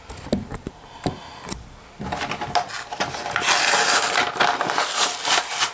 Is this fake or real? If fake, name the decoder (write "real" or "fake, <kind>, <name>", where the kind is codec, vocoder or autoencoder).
real